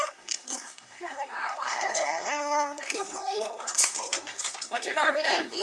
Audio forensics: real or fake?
fake